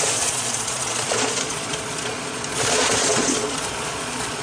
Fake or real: fake